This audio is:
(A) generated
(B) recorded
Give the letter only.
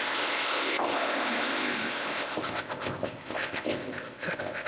A